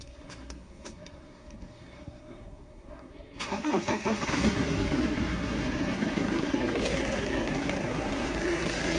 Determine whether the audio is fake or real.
fake